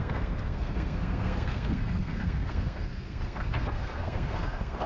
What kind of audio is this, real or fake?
fake